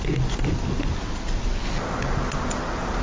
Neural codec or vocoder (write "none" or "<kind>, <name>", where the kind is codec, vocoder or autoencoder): none